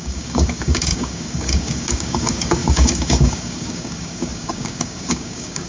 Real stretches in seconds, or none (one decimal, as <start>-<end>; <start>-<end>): none